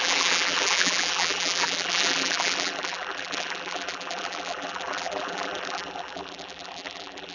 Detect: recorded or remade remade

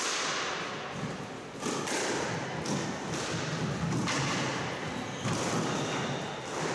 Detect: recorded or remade recorded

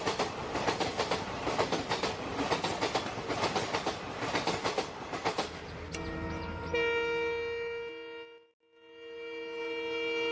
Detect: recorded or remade recorded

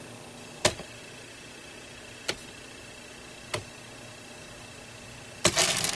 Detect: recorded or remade recorded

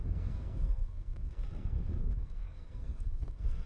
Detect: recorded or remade remade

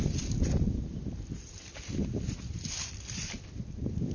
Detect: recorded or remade recorded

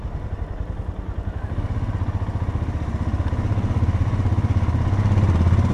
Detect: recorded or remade recorded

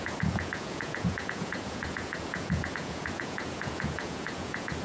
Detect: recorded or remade remade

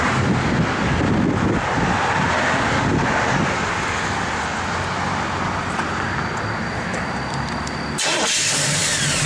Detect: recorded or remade recorded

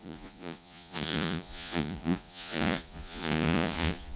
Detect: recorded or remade remade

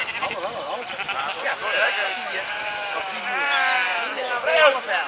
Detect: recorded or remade remade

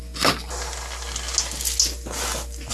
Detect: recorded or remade recorded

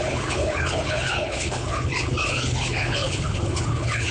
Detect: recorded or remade remade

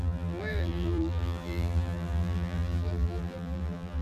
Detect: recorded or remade remade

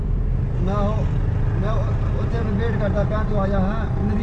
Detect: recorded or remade recorded